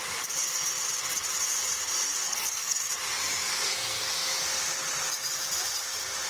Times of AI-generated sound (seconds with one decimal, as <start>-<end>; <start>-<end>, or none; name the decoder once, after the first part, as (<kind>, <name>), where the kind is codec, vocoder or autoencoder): 2.2-2.9 (codec, SNAC); 3.5-4.1

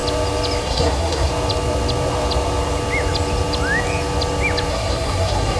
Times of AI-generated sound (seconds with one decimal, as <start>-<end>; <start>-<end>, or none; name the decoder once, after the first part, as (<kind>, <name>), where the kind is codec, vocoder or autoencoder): 0.6-1.3 (codec, SNAC); 4.7-5.6

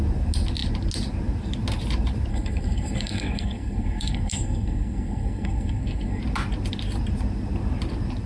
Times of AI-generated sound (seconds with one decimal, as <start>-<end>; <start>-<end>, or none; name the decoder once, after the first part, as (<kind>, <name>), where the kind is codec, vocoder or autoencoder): 2.3-6.2 (codec, SNAC)

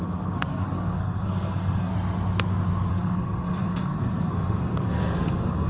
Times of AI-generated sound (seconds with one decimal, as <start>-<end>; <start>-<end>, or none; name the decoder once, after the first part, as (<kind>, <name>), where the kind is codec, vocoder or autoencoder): 0.0-1.9 (codec, SNAC); 2.9-5.7